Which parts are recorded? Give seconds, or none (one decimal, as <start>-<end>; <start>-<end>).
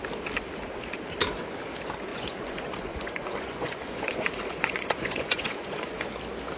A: 0.0-2.1; 6.1-6.6